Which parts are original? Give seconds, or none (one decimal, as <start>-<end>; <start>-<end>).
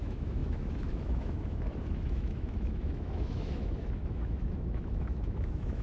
none